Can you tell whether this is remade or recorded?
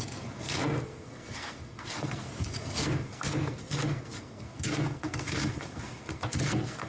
remade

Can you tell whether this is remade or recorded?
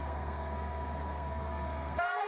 remade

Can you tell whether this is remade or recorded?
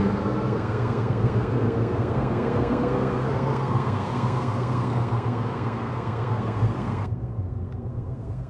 remade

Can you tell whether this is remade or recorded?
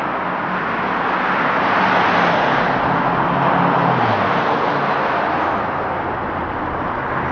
recorded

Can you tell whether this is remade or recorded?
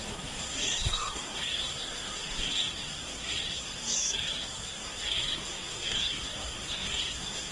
remade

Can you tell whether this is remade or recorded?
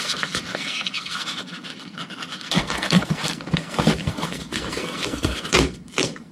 remade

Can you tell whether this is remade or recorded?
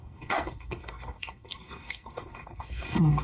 remade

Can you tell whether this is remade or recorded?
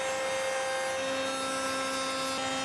recorded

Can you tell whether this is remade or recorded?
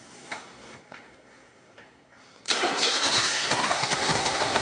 remade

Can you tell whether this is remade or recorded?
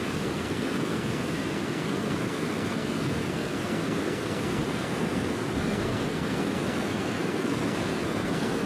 remade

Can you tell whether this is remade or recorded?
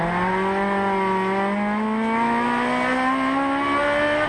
recorded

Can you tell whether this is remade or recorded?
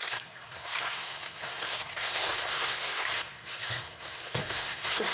remade